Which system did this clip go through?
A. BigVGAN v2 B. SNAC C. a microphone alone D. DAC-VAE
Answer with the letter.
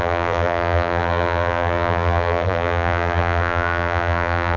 A